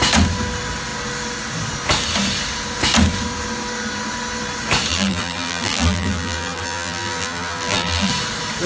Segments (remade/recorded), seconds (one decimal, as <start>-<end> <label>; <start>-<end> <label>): 0.0-4.9 recorded; 4.9-8.1 remade; 8.1-8.7 recorded